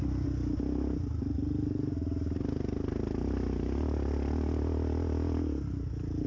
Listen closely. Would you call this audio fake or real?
real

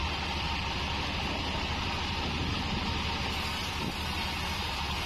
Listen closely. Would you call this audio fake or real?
real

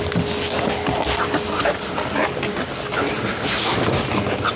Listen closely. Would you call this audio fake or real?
real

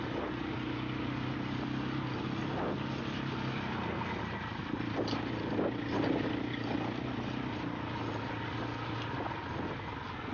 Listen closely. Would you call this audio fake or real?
real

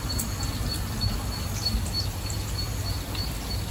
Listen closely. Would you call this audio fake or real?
real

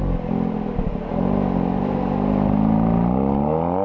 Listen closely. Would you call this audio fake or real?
real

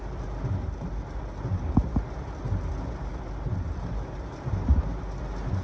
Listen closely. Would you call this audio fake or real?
real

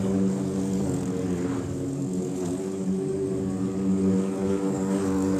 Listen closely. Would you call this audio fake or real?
fake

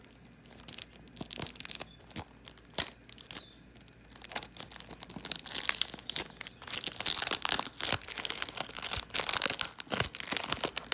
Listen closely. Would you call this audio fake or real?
real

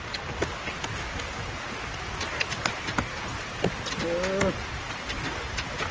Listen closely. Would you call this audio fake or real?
real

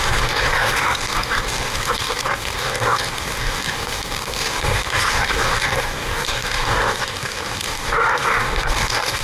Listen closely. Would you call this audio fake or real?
fake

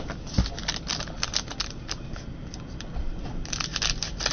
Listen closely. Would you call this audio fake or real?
real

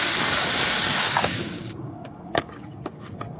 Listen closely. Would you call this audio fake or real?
fake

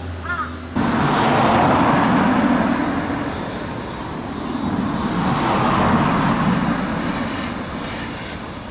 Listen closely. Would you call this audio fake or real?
real